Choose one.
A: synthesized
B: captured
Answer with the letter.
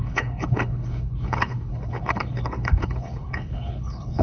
A